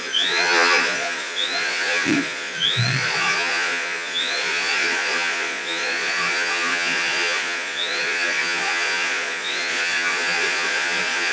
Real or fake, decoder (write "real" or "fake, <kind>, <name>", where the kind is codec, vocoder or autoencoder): fake, vocoder, Vocos